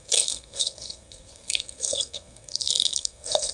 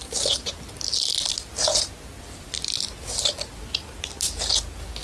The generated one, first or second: first